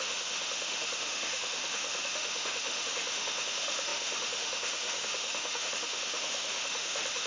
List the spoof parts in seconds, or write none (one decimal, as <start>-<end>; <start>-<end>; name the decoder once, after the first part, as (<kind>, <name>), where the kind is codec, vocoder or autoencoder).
0.0-7.3 (autoencoder, DAC-VAE)